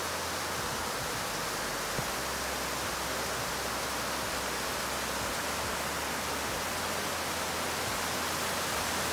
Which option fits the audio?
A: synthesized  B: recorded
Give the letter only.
B